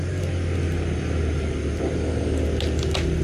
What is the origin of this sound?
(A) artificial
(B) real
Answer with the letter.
B